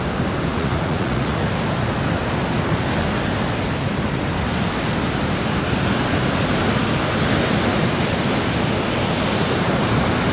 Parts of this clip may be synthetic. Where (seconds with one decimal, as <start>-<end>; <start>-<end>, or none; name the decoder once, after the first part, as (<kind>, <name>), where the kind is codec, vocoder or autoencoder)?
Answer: 0.5-1.5 (vocoder, Vocos)